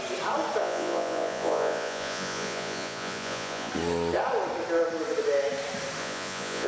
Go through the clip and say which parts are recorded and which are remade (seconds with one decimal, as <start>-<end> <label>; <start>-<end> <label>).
0.0-0.6 recorded; 0.6-3.7 remade; 3.7-6.0 recorded; 6.0-6.7 remade